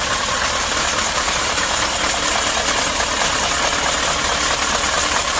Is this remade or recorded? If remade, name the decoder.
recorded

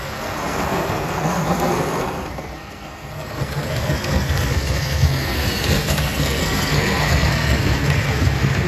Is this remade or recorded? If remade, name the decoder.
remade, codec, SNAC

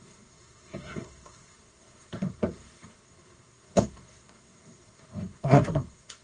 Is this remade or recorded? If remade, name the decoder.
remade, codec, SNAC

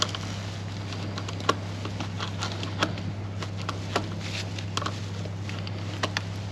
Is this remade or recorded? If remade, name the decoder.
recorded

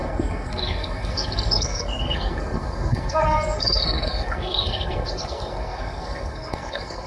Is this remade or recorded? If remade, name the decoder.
remade, codec, SNAC